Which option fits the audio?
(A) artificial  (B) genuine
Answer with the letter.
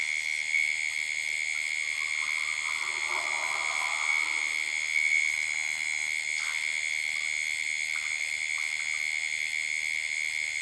B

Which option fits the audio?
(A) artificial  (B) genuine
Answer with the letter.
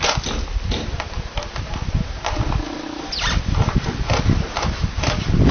B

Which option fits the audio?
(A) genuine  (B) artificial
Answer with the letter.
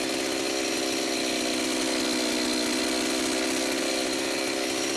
A